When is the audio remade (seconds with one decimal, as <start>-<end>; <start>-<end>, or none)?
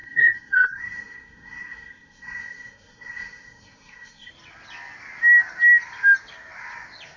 0.0-4.3